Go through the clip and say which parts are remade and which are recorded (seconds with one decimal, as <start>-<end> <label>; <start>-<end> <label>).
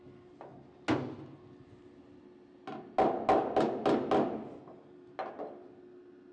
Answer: 0.0-6.3 recorded